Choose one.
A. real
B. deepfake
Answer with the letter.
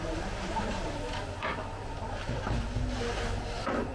A